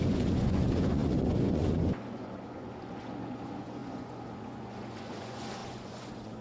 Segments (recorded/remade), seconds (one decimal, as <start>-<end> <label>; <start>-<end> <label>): 0.0-6.4 remade

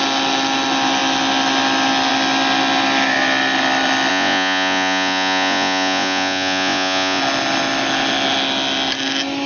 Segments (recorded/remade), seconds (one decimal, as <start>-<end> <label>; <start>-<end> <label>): 0.0-4.1 recorded; 4.1-7.2 remade; 7.2-9.5 recorded

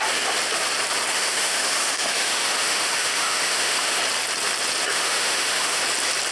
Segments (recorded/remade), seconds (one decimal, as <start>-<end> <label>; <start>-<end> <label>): 0.0-1.1 recorded; 1.1-4.0 remade; 4.0-4.9 recorded; 4.9-5.8 remade; 5.8-6.3 recorded

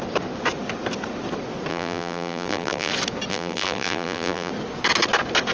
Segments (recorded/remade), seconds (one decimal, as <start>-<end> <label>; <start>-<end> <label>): 0.0-1.7 recorded; 1.7-2.9 remade; 2.9-3.3 recorded; 3.3-4.5 remade; 4.5-5.5 recorded